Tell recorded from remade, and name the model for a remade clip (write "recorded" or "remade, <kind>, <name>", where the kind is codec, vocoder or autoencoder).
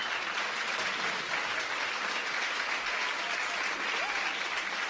recorded